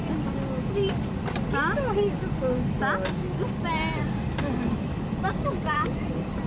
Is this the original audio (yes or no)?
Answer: yes